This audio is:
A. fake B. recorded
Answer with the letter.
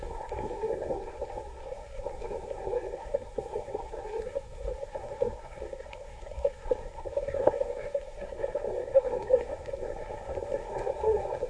A